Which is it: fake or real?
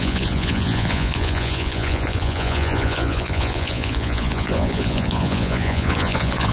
fake